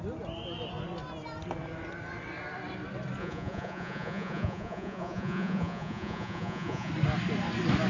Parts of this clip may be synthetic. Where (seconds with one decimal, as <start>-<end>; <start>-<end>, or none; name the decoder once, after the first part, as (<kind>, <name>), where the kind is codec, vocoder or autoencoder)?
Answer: 3.2-6.9 (vocoder, Vocos)